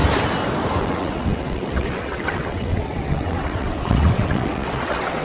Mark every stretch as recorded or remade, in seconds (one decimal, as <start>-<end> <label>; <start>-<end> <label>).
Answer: 0.0-0.8 recorded; 0.8-5.2 remade